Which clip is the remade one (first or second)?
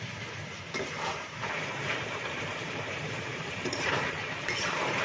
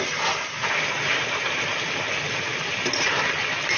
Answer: first